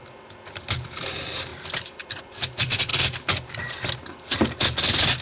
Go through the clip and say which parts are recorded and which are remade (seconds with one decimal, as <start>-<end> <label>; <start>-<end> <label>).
0.0-5.2 recorded

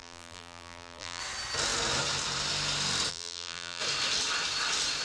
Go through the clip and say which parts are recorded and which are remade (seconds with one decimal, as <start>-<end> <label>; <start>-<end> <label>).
0.0-1.2 remade; 1.2-3.1 recorded; 3.1-3.8 remade; 3.8-5.0 recorded

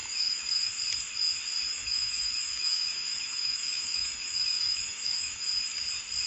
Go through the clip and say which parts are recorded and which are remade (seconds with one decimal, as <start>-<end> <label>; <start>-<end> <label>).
0.0-0.7 remade; 0.7-1.7 recorded; 1.7-5.5 remade; 5.5-6.3 recorded

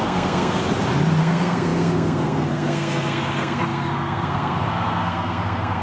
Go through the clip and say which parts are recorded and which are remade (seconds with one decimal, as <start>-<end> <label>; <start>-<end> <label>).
0.0-0.6 remade; 0.6-1.2 recorded; 1.2-5.8 remade

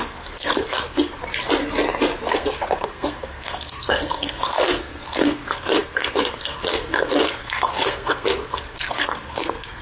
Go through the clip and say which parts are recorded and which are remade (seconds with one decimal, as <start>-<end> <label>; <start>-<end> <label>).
0.0-1.2 remade; 1.2-2.3 recorded; 2.3-9.8 remade

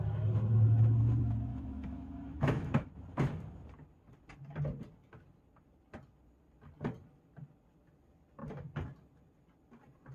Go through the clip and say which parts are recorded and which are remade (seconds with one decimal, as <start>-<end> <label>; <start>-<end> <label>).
0.0-1.5 recorded; 1.5-2.9 remade; 2.9-10.1 recorded

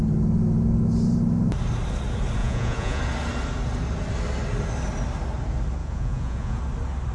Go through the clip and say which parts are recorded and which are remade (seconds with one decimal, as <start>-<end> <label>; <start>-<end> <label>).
0.0-2.4 recorded; 2.4-3.0 remade; 3.0-5.8 recorded; 5.8-6.6 remade; 6.6-7.1 recorded